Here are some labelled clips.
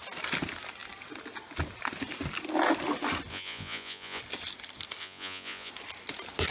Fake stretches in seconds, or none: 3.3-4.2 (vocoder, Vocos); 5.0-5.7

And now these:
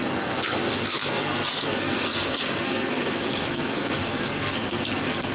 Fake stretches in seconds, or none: 0.0-5.3 (codec, SNAC)

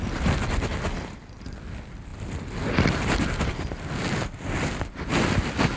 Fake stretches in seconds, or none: none